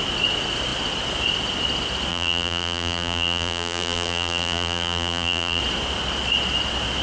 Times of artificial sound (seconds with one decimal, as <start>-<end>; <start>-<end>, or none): 2.1-5.6